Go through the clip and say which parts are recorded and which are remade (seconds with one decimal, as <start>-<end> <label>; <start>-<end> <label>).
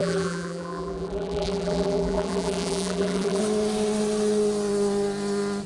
0.0-3.4 remade; 3.4-5.7 recorded